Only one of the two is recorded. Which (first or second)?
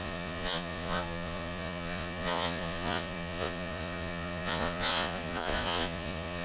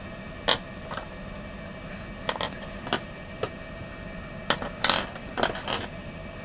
second